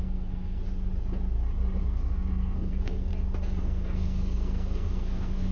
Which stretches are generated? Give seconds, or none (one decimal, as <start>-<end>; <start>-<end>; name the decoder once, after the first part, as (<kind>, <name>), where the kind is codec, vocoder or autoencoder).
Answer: 0.0-0.6 (codec, SNAC); 1.8-3.1; 3.6-5.5